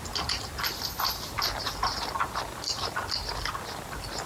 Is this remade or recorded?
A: recorded